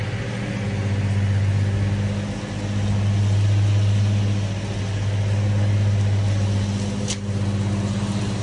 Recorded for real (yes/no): yes